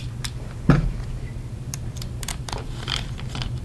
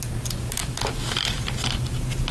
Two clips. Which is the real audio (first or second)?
second